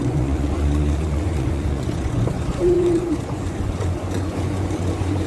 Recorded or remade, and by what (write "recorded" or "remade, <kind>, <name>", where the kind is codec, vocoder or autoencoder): remade, vocoder, Vocos